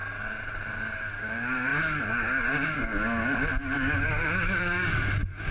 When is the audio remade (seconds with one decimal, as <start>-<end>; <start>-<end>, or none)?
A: 1.2-5.5